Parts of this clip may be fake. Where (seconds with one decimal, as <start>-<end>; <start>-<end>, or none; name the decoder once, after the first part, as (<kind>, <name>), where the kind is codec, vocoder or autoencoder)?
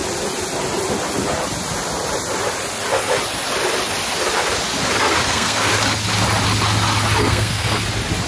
5.2-5.7 (codec, SNAC); 7.2-7.8